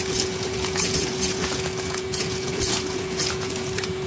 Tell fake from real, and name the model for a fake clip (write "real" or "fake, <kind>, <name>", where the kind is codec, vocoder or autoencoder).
fake, vocoder, Vocos